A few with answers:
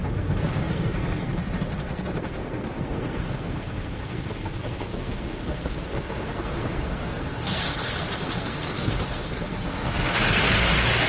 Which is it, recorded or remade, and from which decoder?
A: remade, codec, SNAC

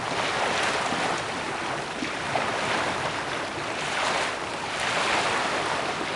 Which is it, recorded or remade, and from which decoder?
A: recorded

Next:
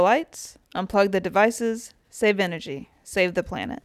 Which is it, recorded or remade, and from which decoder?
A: recorded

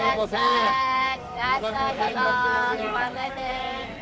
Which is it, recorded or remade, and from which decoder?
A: remade, codec, SNAC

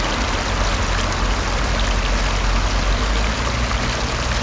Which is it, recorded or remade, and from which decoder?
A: recorded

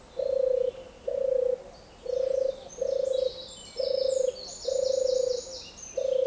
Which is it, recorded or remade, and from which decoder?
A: recorded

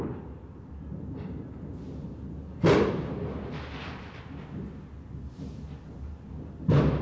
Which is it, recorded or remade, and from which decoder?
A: recorded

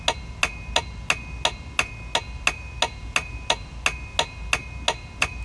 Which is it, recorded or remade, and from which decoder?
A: recorded